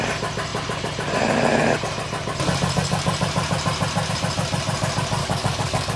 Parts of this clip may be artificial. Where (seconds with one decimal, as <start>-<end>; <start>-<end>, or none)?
5.2-6.0